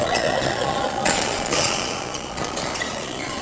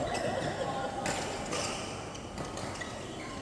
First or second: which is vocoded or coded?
first